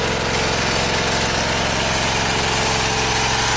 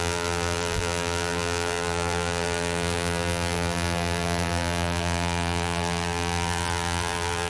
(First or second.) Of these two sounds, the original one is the first